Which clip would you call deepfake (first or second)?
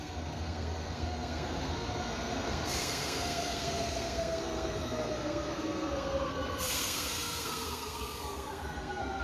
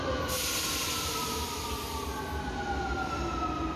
first